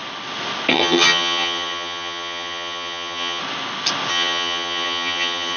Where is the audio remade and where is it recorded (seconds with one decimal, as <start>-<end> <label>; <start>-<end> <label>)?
0.0-0.7 recorded; 0.7-3.4 remade; 3.4-4.1 recorded; 4.1-5.6 remade